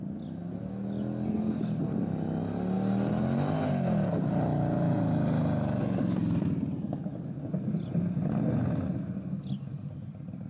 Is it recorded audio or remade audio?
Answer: recorded